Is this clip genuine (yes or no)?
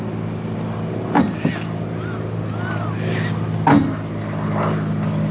yes